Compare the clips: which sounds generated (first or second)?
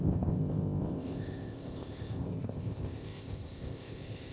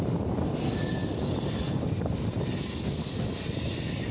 first